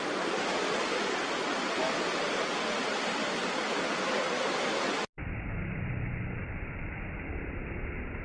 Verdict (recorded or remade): recorded